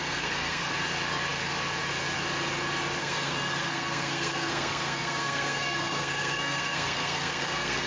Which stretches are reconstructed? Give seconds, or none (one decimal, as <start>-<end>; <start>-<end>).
0.0-0.7; 3.0-7.9